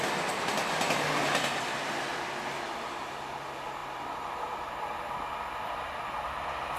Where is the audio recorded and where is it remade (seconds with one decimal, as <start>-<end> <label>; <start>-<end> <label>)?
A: 0.0-6.8 recorded